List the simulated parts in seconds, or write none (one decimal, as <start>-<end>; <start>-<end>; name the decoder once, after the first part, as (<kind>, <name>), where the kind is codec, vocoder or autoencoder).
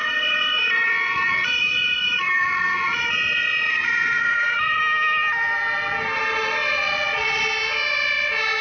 0.0-4.8 (vocoder, Vocos); 6.8-7.4